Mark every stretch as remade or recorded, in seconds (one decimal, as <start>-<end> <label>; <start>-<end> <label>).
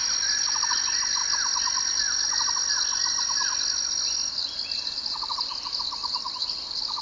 0.0-7.0 recorded